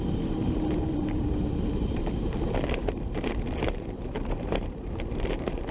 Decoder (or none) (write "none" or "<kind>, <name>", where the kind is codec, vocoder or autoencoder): vocoder, BigVGAN v2